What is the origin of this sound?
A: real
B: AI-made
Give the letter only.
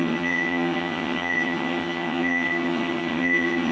B